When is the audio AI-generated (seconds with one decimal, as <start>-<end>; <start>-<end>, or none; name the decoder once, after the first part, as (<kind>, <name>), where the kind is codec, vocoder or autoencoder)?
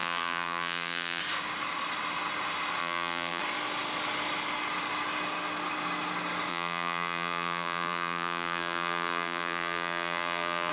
0.0-1.2 (vocoder, BigVGAN v2); 2.8-3.4; 6.5-10.7